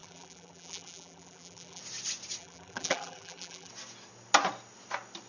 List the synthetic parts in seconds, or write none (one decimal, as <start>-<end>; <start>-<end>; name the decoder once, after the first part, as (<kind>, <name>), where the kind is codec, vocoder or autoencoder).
0.0-1.8 (vocoder, BigVGAN v2); 2.4-3.7